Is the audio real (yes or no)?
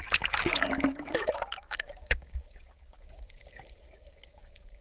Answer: no